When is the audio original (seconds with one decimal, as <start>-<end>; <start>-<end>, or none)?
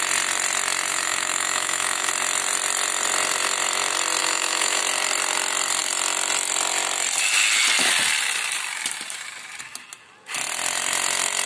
0.0-0.9; 2.1-4.2; 4.8-11.5